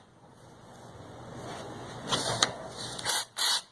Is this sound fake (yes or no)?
yes